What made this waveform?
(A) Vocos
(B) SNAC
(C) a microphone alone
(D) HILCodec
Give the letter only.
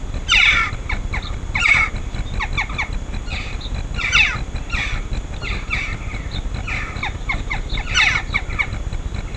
C